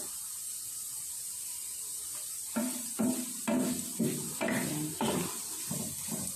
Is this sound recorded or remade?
recorded